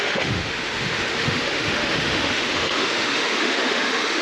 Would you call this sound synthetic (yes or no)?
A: yes